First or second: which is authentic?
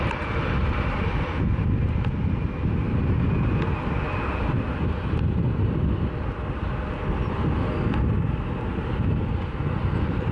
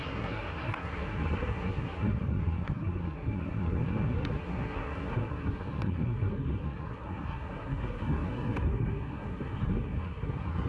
first